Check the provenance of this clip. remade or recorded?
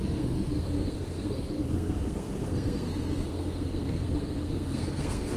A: remade